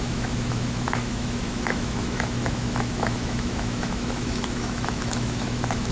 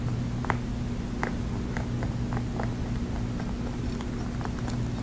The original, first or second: second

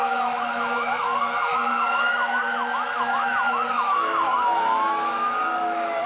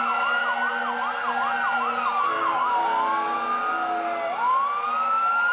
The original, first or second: second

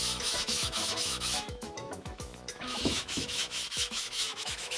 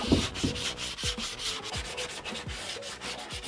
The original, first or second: second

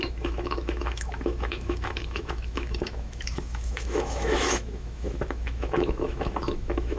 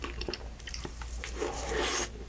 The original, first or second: second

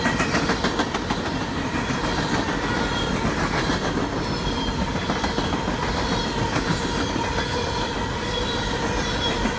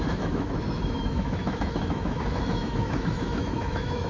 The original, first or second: first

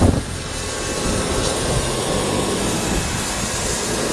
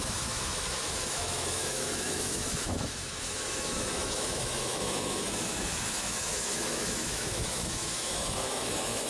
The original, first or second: first